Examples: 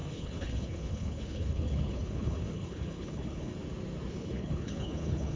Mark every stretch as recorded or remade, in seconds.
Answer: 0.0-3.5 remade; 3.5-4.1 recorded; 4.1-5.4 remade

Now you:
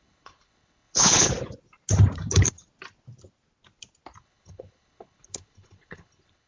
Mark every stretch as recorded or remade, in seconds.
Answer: 0.0-1.3 remade; 1.3-4.2 recorded; 4.2-6.5 remade

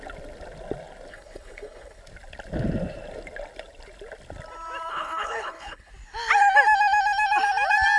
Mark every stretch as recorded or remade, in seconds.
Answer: 0.0-1.1 recorded; 1.1-2.0 remade; 2.0-4.9 recorded; 4.9-5.9 remade; 5.9-8.0 recorded

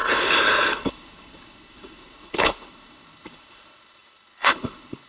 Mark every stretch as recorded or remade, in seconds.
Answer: 0.0-5.1 remade

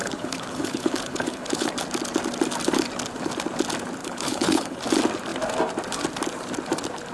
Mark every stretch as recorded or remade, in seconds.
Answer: 0.0-1.7 remade; 1.7-4.0 recorded; 4.0-4.8 remade; 4.8-7.1 recorded

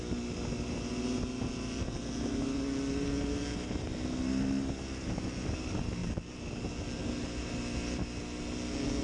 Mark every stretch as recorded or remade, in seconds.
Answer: 0.0-9.0 recorded

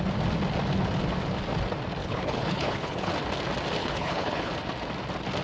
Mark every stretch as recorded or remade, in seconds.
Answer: 0.0-2.0 recorded; 2.0-3.1 remade; 3.1-3.8 recorded; 3.8-4.5 remade; 4.5-5.4 recorded

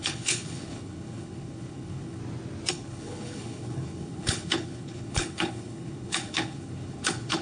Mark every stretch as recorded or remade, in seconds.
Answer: 0.0-2.2 remade; 2.2-2.7 recorded; 2.7-7.4 remade